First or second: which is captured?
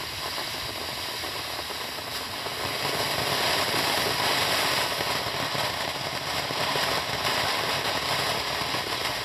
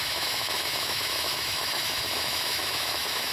first